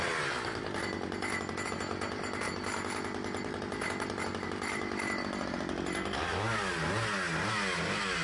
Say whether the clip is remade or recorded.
recorded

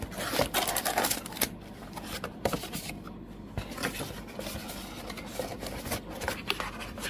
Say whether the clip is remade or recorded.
recorded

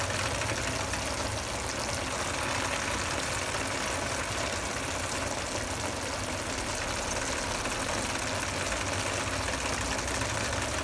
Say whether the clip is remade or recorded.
recorded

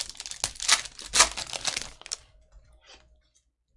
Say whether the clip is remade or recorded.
recorded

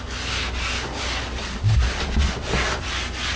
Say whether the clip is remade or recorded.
recorded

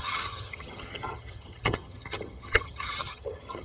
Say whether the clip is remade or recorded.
remade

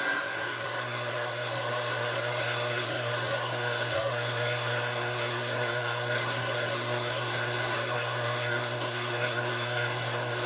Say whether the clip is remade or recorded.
remade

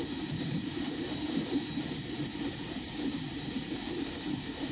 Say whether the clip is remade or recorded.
remade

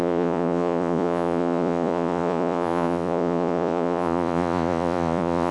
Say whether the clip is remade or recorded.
remade